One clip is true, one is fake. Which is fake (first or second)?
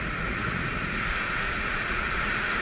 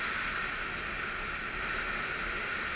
first